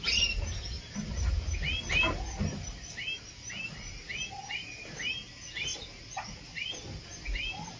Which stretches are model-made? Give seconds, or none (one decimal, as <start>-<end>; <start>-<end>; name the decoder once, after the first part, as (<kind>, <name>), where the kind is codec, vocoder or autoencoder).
none